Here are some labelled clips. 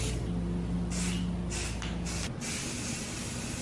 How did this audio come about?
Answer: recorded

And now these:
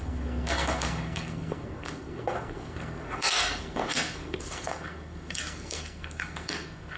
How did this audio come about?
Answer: remade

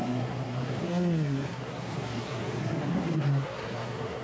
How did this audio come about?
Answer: remade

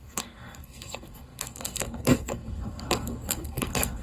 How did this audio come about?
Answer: remade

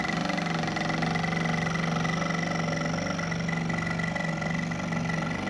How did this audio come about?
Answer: recorded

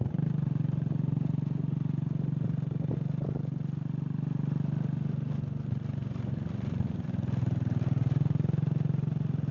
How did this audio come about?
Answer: recorded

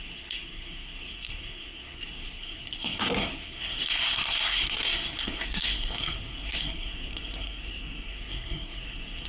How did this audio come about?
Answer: remade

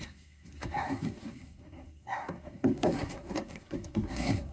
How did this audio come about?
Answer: remade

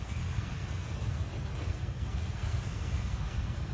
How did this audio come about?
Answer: remade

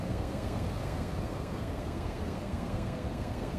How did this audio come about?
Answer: remade